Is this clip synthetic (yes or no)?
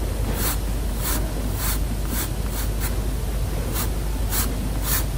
no